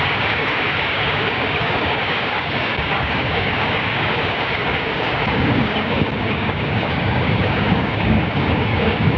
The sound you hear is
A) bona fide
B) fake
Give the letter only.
B